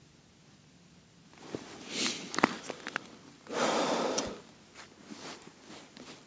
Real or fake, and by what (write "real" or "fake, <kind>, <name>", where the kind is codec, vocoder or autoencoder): real